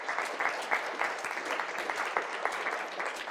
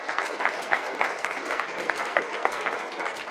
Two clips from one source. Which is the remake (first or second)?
second